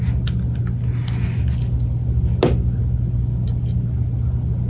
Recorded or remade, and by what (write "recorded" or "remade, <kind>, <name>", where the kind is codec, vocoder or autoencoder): recorded